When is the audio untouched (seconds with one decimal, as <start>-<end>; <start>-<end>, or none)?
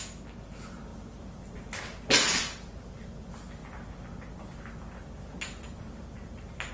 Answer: 0.0-6.7